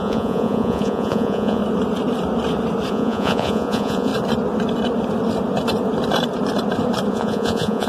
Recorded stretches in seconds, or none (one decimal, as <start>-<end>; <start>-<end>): 1.6-2.9; 4.1-7.1